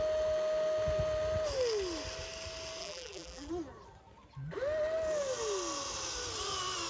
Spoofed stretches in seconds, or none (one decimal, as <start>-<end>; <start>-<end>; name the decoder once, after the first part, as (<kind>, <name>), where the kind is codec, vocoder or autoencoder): 2.8-3.5 (vocoder, BigVGAN v2)